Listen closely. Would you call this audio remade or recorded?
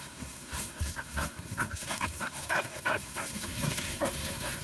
remade